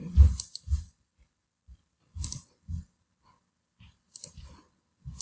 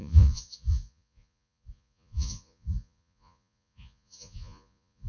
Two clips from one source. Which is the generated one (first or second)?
second